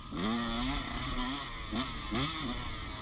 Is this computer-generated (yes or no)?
no